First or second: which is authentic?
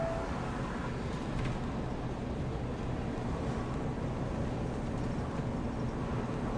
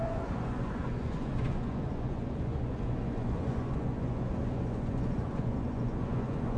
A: first